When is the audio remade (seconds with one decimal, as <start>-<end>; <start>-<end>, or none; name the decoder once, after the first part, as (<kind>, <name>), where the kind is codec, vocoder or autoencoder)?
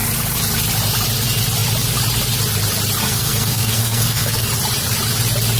3.0-4.4 (codec, SNAC)